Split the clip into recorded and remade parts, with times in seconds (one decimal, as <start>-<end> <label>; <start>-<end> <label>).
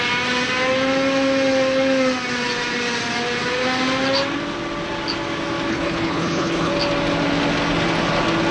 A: 0.0-5.7 recorded; 5.7-6.7 remade; 6.7-8.5 recorded